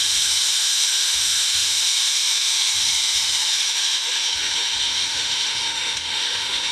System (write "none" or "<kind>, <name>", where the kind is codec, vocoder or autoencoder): autoencoder, DAC-VAE